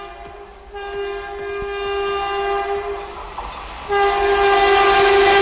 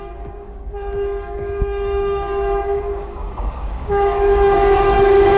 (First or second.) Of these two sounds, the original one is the first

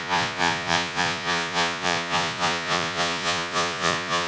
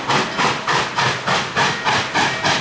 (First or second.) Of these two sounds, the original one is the second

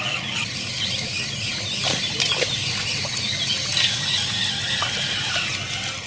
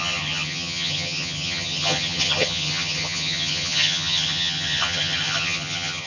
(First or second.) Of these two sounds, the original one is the first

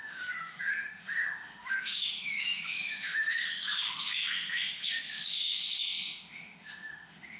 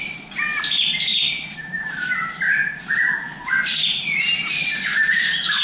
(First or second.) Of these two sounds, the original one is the second